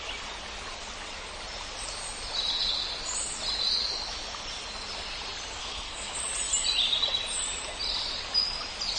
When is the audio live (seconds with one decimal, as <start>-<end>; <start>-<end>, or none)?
0.0-5.6; 6.1-9.0